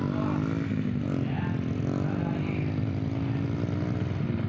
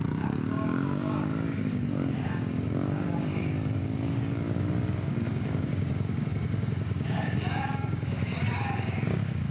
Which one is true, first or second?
first